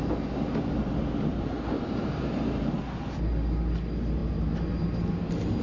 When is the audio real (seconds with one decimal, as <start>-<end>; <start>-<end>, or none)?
0.0-1.3; 2.8-5.6

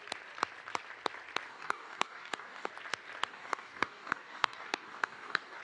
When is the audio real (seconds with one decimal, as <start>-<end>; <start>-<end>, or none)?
0.0-1.5; 2.7-3.3